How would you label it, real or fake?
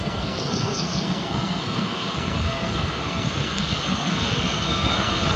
fake